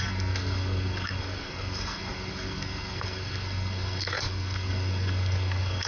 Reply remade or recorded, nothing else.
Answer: remade